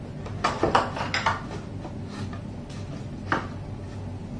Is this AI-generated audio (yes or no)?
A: no